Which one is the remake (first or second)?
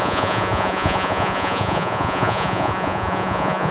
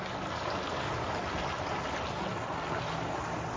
first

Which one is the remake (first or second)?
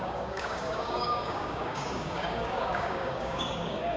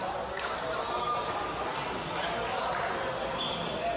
first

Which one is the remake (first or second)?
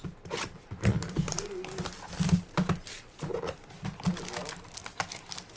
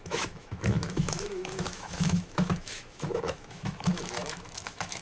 second